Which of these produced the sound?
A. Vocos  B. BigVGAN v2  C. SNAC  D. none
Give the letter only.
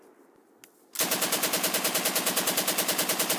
D